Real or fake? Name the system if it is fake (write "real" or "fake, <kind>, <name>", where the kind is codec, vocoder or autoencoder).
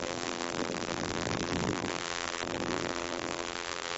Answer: fake, vocoder, BigVGAN v2